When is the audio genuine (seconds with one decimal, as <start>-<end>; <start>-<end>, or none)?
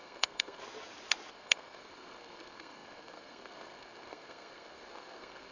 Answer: 0.6-1.3